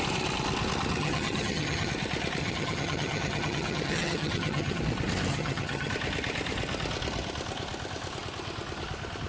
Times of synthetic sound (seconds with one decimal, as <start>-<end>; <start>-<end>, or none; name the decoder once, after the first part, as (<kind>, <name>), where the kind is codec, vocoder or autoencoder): 1.0-1.9 (vocoder, HiFi-GAN); 2.4-4.8; 5.3-5.9